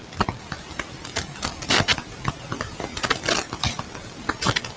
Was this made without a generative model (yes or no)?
yes